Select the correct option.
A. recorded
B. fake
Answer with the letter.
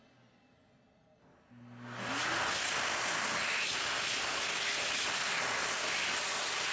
A